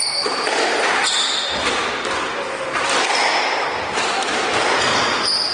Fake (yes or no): no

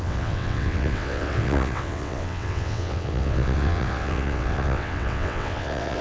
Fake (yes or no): yes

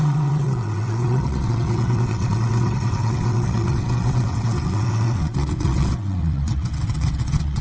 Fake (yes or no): yes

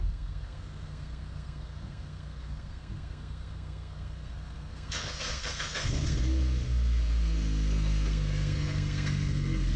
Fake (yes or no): yes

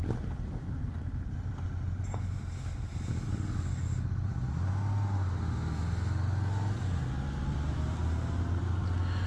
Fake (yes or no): no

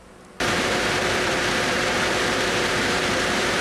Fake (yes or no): yes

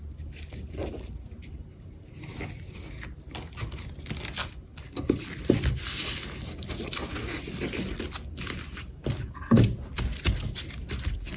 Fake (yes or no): no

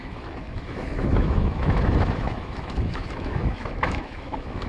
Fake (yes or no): yes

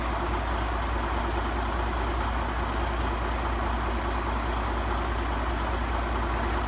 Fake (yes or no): no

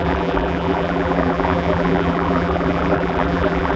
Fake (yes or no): yes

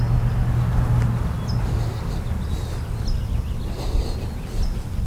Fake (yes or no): no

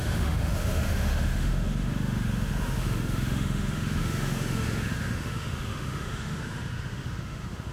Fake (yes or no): yes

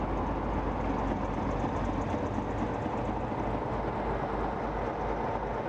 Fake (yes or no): no